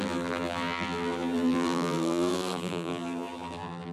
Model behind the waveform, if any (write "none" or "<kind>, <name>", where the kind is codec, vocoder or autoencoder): vocoder, BigVGAN v2